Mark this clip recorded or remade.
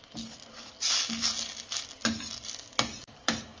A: recorded